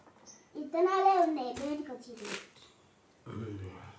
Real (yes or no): yes